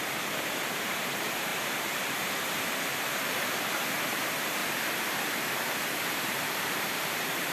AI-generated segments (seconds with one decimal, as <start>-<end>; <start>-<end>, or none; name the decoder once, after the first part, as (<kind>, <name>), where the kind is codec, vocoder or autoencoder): 0.0-1.5 (vocoder, BigVGAN v2); 2.1-4.6; 5.7-7.5